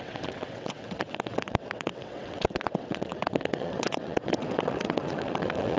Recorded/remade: remade